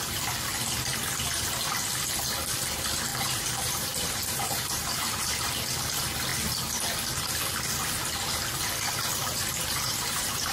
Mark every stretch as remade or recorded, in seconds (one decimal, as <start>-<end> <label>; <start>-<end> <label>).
0.0-3.1 recorded; 3.1-5.5 remade; 5.5-9.2 recorded; 9.2-10.5 remade